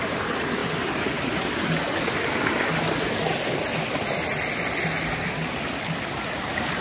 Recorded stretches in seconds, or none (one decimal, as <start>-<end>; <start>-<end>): 0.0-6.8